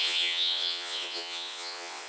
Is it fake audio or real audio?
fake